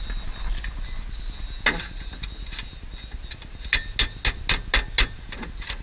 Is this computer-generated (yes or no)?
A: no